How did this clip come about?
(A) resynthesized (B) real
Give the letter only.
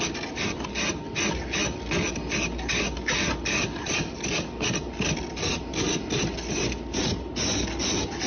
B